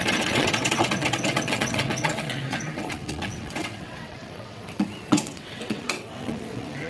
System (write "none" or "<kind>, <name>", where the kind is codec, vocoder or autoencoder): vocoder, WaveNeXt